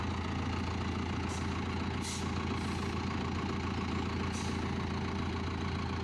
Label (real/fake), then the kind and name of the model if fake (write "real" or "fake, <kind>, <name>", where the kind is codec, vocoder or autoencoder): real